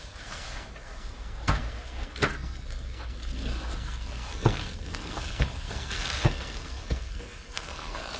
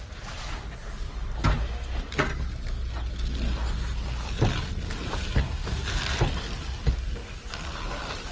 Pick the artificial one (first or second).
first